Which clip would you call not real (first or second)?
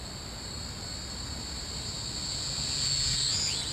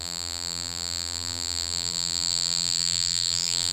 second